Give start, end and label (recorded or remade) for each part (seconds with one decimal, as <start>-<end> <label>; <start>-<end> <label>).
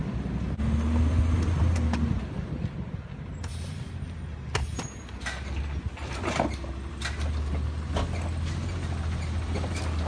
0.0-10.1 recorded